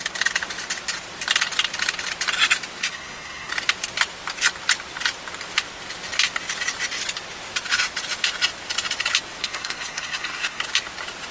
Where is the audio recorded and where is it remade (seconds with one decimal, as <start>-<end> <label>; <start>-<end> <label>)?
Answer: 0.0-2.8 recorded; 2.8-3.5 remade; 3.5-9.4 recorded; 9.4-10.6 remade; 10.6-11.3 recorded